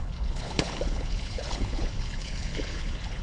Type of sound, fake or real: fake